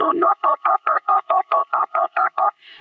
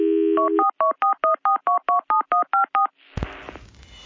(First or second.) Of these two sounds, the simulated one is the first